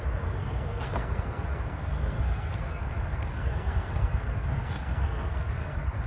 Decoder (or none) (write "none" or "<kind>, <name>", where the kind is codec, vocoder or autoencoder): codec, SNAC